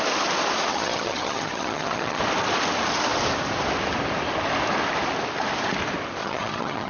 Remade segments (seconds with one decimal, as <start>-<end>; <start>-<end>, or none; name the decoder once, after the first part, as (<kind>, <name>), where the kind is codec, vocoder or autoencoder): 0.7-2.2 (vocoder, HiFi-GAN); 6.2-6.9